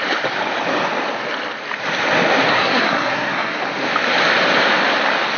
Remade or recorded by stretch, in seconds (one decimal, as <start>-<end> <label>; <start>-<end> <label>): 0.0-2.5 recorded; 2.5-3.6 remade; 3.6-5.4 recorded